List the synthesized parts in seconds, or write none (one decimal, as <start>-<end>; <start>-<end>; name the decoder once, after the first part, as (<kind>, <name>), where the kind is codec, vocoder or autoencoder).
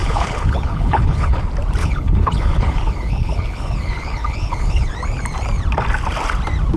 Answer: 0.0-1.4 (codec, HILCodec); 1.8-4.9